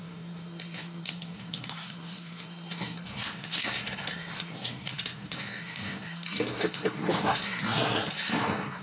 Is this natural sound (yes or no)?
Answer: no